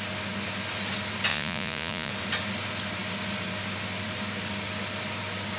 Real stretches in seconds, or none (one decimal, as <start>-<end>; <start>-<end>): 0.0-1.3; 2.1-5.6